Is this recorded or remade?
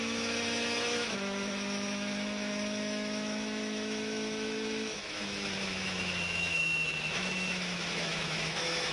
remade